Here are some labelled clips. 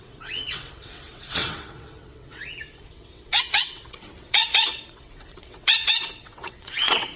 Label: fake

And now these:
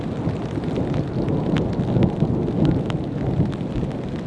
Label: real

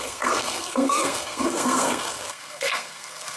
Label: fake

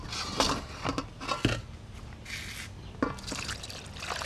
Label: real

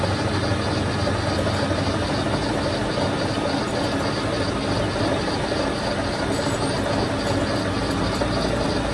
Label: real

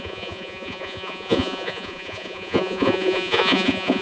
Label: fake